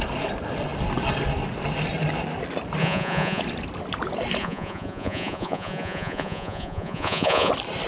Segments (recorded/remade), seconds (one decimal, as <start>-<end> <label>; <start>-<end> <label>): 0.0-2.8 recorded; 2.8-3.4 remade; 3.4-4.4 recorded; 4.4-7.5 remade; 7.5-7.9 recorded